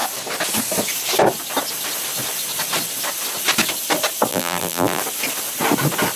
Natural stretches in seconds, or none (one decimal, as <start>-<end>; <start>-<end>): 0.0-4.3; 5.0-6.2